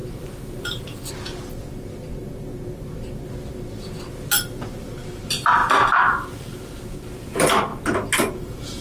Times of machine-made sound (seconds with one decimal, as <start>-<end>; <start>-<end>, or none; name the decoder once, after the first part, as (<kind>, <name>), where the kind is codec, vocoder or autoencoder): 0.0-1.1 (vocoder, BigVGAN v2); 5.6-6.6; 7.7-8.8